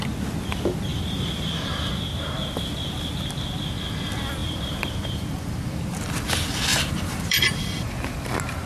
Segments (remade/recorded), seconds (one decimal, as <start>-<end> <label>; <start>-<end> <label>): 0.0-0.9 recorded; 0.9-1.7 remade; 1.7-4.4 recorded; 4.4-6.1 remade; 6.1-6.7 recorded; 6.7-7.9 remade; 7.9-8.7 recorded